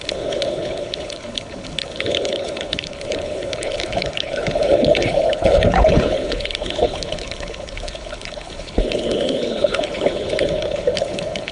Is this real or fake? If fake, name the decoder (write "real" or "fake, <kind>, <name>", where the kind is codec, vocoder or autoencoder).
fake, codec, HILCodec